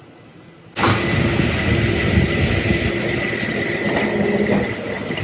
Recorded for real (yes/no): yes